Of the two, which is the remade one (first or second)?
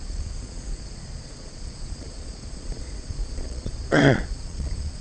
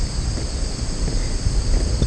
first